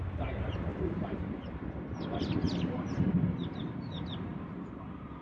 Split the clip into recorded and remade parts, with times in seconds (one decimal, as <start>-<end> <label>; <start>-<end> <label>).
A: 0.0-0.7 recorded; 0.7-3.8 remade; 3.8-5.2 recorded